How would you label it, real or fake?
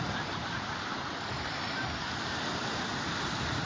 real